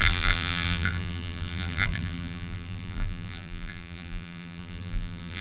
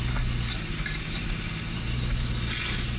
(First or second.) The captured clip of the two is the second